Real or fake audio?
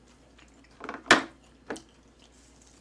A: real